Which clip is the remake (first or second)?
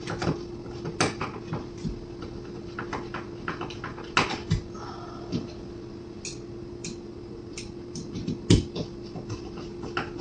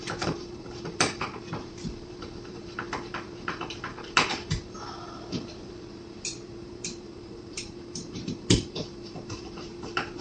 second